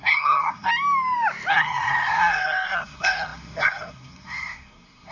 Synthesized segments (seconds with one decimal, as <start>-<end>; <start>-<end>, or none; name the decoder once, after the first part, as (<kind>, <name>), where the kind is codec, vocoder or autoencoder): 0.0-0.7 (codec, SNAC); 1.5-5.1